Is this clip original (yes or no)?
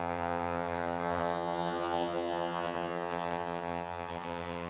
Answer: no